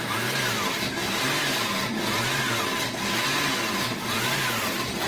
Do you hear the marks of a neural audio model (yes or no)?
no